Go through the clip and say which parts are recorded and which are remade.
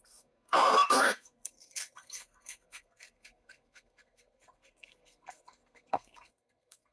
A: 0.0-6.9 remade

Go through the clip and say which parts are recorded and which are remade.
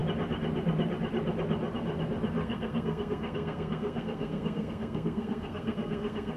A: 0.0-2.4 recorded; 2.4-6.4 remade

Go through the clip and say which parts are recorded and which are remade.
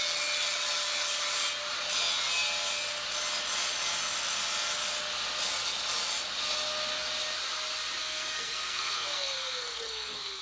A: 0.0-8.0 recorded; 8.0-10.4 remade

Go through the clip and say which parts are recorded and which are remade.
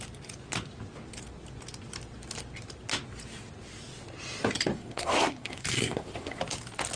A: 0.0-4.7 recorded; 4.7-6.4 remade; 6.4-7.0 recorded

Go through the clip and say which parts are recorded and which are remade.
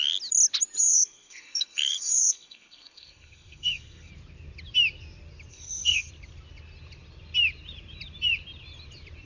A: 0.0-0.8 recorded; 0.8-4.1 remade; 4.1-5.5 recorded; 5.5-6.1 remade; 6.1-9.3 recorded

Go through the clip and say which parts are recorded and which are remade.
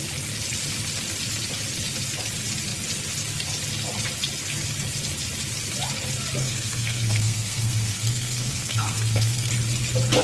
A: 0.0-6.4 recorded; 6.4-9.5 remade; 9.5-10.2 recorded